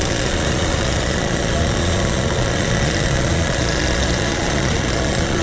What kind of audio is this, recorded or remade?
remade